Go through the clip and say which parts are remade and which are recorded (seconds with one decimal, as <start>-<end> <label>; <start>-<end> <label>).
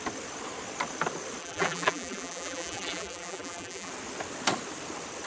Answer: 0.0-1.4 recorded; 1.4-3.9 remade; 3.9-5.3 recorded